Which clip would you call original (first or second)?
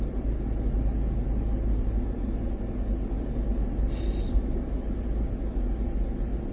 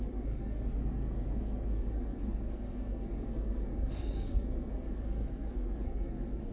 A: first